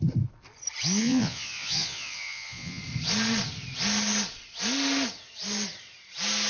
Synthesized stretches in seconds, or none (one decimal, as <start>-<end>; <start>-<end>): 1.0-2.8